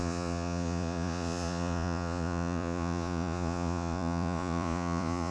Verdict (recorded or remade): remade